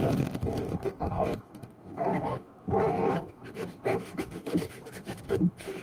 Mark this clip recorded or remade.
remade